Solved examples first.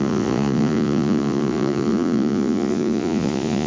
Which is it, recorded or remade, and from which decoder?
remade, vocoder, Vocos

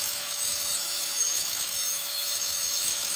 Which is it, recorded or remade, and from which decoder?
remade, autoencoder, DAC-VAE